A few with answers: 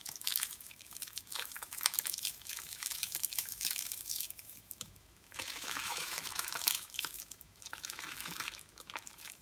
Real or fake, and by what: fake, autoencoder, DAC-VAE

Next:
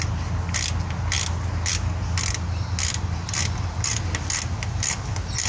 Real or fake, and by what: real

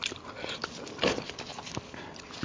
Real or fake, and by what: real